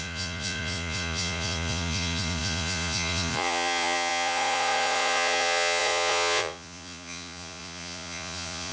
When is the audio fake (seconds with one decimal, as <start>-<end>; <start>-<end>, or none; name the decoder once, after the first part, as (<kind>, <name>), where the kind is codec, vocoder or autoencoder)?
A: 0.0-8.7 (vocoder, Vocos)

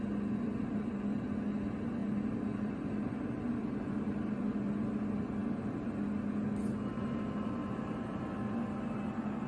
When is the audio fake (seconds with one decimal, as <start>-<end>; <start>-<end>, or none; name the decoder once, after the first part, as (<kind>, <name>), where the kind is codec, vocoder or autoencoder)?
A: 0.6-1.2 (vocoder, BigVGAN v2); 2.0-4.4; 7.6-8.2

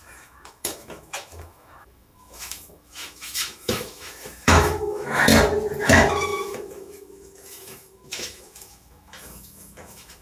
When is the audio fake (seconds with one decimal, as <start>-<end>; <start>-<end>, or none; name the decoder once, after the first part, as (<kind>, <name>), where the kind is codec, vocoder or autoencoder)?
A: 0.0-5.3 (autoencoder, DAC-VAE); 5.8-10.2

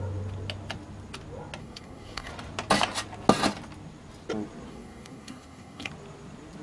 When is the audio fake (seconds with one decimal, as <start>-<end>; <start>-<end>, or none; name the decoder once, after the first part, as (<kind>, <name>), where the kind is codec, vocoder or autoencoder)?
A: 1.6-2.3 (codec, SNAC); 4.7-5.9